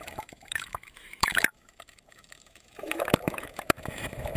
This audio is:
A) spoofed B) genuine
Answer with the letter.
A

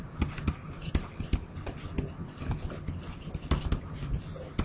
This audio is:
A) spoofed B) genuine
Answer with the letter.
B